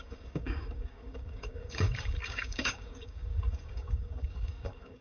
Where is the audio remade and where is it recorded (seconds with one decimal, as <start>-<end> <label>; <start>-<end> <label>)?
0.0-5.0 remade